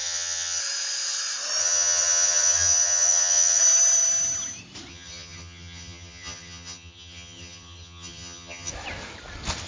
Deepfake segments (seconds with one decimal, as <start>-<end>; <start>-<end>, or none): 0.0-0.6; 1.6-3.6; 4.9-8.7